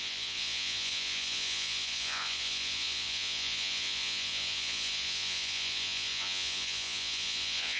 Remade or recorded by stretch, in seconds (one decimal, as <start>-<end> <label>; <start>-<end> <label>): 0.0-7.8 remade